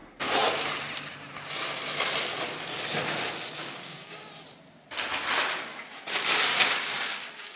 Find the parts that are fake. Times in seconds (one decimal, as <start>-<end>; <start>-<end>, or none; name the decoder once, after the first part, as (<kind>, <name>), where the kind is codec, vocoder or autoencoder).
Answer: 3.6-4.2 (codec, DAC); 6.5-7.6